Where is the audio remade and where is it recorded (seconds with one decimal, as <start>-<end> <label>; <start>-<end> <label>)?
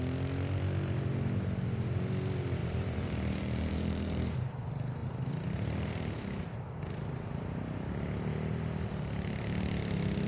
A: 0.0-2.6 recorded; 2.6-4.5 remade; 4.5-5.0 recorded; 5.0-7.9 remade; 7.9-10.3 recorded